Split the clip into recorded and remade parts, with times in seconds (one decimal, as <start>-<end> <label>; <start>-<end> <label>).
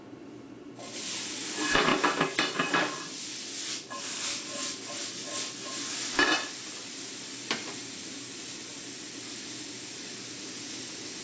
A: 0.0-1.9 recorded; 1.9-3.9 remade; 3.9-8.7 recorded; 8.7-9.9 remade; 9.9-11.2 recorded